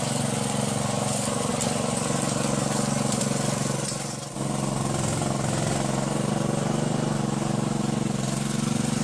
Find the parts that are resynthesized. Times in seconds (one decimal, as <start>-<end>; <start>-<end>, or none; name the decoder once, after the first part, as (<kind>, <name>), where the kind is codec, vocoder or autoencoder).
none